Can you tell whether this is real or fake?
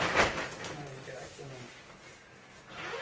real